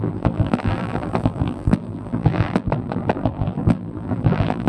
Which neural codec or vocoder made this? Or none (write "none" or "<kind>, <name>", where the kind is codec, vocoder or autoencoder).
vocoder, BigVGAN v2